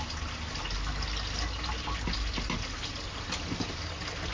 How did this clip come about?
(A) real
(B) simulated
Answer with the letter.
A